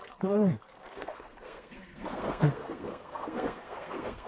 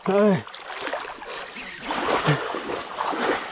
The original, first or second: second